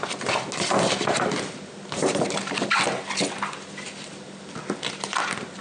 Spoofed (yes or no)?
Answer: no